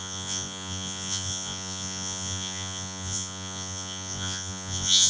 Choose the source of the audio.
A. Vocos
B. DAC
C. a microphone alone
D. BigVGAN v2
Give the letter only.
A